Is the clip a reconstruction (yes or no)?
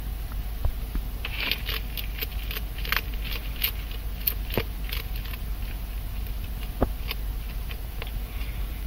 no